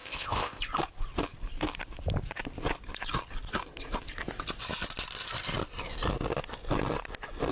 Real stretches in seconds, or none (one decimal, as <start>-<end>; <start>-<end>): 0.6-7.5